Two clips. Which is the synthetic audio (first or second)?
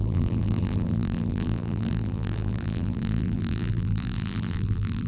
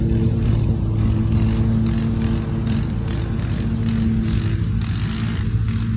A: first